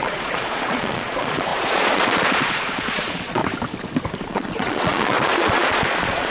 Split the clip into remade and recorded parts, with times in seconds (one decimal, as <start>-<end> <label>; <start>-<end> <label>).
0.0-3.4 remade; 3.4-4.2 recorded; 4.2-6.3 remade